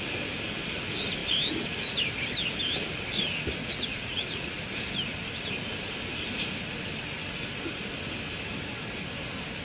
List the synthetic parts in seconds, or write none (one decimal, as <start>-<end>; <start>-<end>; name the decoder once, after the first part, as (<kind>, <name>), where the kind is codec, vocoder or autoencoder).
3.6-4.5 (vocoder, Vocos)